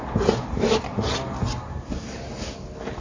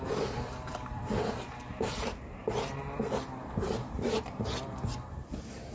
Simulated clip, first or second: second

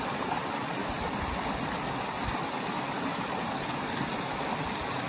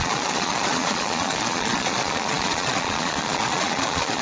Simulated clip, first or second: second